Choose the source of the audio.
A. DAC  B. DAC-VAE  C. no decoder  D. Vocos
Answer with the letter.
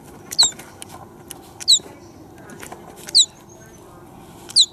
C